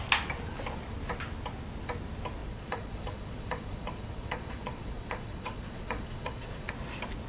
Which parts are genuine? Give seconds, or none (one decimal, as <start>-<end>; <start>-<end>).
0.0-2.4; 6.7-7.3